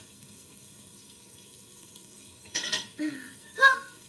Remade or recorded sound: remade